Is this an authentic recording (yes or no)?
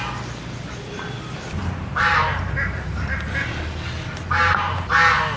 yes